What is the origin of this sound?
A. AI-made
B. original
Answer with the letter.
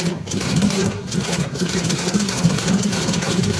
A